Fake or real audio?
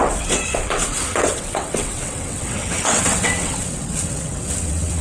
fake